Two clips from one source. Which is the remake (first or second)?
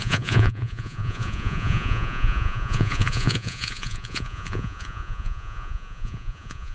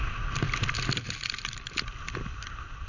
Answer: first